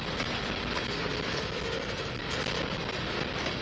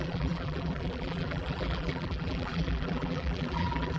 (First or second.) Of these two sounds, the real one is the first